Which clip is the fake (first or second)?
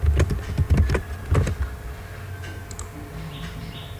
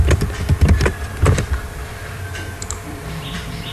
second